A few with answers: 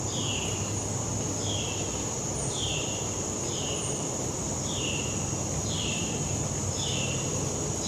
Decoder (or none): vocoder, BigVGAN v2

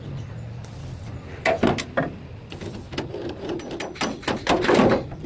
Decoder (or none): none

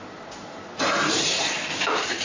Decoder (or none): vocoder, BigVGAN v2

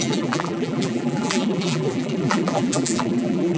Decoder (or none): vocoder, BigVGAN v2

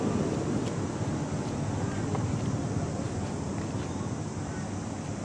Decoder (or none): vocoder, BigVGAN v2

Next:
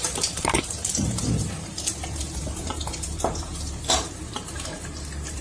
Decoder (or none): vocoder, BigVGAN v2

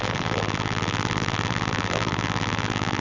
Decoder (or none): vocoder, BigVGAN v2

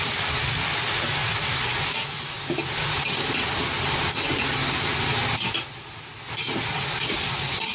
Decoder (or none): none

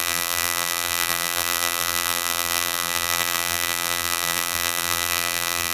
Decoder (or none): vocoder, BigVGAN v2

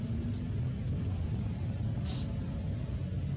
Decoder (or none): none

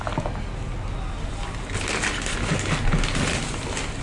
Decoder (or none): none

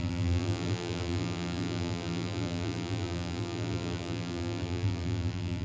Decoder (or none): vocoder, BigVGAN v2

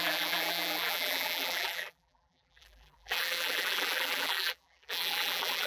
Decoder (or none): vocoder, BigVGAN v2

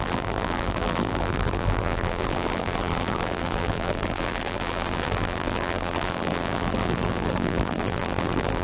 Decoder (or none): vocoder, BigVGAN v2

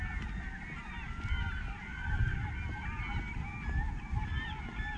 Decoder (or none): none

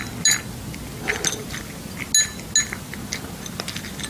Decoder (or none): none